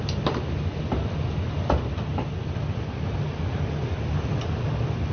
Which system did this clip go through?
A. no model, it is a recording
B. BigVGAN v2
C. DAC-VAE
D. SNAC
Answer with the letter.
A